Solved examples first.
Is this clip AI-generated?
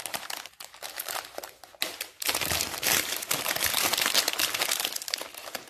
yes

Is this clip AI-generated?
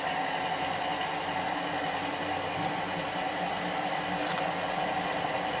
no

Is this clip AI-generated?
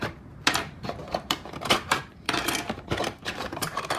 yes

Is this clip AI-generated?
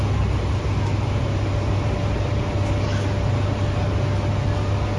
no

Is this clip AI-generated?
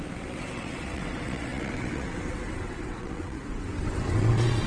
yes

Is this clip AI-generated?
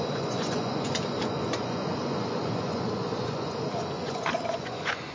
yes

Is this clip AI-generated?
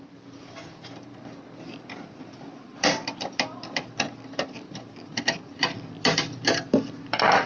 yes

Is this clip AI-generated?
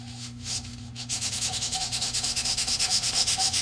yes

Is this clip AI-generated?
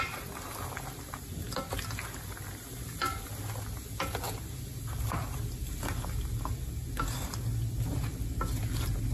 no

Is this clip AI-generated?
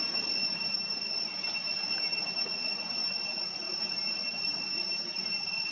no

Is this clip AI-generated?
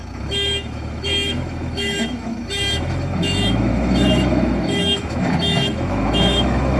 yes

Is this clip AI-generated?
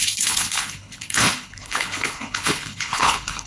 yes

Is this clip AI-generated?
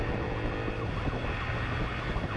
no